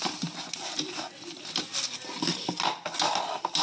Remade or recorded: recorded